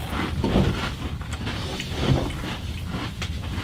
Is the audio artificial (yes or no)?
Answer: no